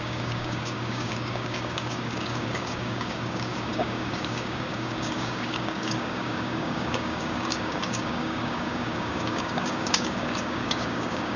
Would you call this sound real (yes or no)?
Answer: no